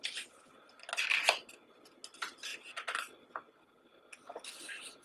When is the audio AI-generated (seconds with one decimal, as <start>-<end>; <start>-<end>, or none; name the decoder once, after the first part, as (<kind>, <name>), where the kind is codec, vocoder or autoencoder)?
none